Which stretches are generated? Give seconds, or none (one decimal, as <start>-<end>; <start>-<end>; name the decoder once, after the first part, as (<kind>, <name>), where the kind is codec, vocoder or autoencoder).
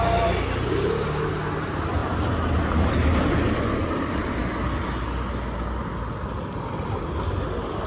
none